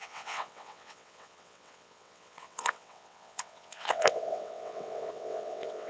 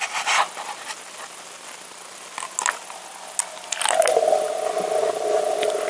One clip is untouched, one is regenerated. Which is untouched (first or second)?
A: second